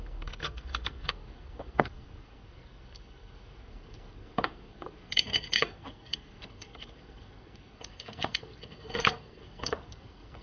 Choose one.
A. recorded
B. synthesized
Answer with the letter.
B